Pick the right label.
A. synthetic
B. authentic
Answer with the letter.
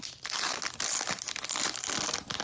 B